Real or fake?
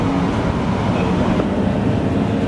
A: real